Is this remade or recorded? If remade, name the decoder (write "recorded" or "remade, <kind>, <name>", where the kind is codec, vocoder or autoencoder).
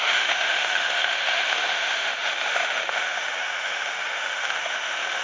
remade, autoencoder, DAC-VAE